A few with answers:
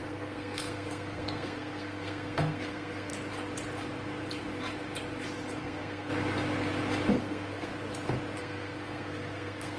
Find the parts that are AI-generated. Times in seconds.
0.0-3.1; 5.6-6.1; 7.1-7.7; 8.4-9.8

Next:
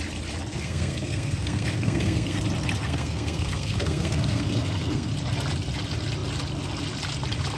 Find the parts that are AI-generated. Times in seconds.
0.5-2.4; 2.8-5.1

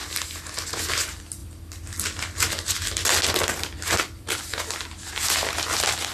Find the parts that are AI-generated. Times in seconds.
none

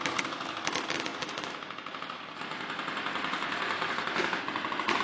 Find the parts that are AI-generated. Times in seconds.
none